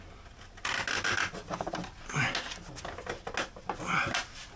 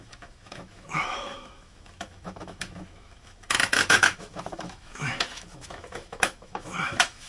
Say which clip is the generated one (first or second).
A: second